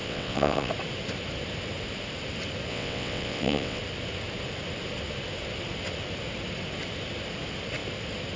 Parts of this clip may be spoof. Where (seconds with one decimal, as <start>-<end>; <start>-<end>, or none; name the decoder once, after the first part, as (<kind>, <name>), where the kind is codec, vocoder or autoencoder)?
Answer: 0.0-0.7 (vocoder, WaveNeXt); 2.7-3.8